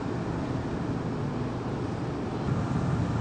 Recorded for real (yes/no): yes